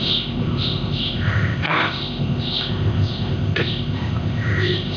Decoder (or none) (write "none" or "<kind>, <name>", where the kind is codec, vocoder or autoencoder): codec, ZipCodec